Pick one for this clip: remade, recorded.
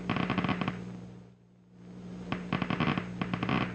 recorded